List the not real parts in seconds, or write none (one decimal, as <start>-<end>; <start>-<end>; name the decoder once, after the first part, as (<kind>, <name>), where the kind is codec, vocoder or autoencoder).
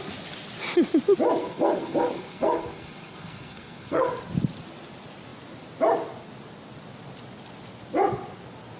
1.4-4.1 (codec, SNAC)